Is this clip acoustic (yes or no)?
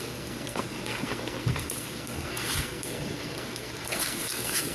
no